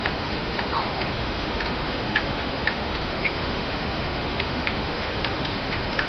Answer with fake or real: fake